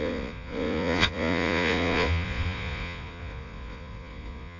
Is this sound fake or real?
fake